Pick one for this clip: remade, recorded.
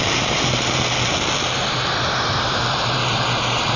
recorded